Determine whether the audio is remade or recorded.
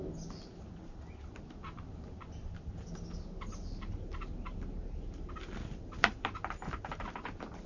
recorded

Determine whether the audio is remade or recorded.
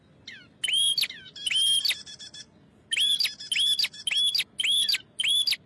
recorded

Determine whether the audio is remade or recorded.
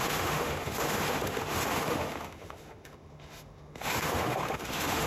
remade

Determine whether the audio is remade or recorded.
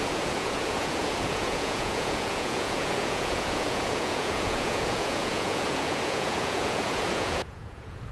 remade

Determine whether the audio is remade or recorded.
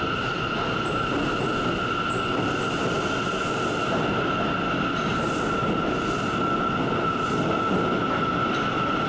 recorded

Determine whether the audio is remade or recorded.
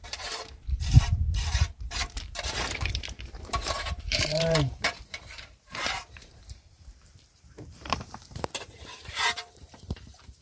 remade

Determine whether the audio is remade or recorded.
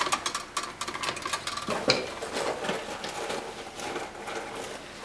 recorded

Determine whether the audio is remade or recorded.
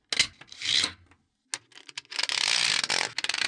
recorded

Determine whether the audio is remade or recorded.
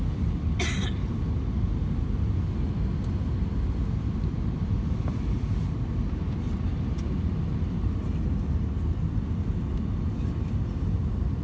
recorded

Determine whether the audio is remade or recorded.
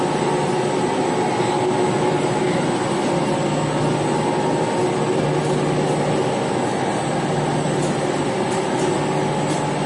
recorded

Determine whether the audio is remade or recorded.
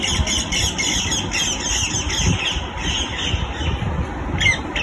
recorded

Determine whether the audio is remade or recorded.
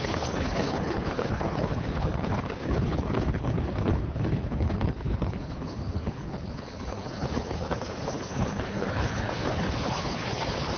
remade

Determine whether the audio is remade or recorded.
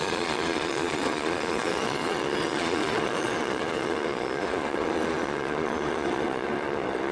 remade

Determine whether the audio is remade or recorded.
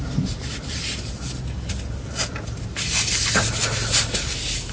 recorded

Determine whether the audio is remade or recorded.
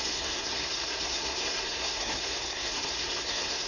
remade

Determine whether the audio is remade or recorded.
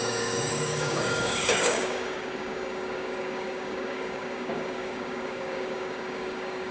remade